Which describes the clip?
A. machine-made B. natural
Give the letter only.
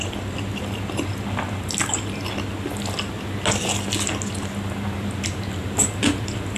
B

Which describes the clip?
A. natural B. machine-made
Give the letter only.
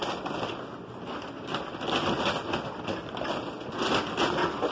A